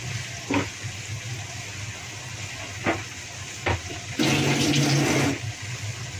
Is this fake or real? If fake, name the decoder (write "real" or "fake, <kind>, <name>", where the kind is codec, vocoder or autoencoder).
real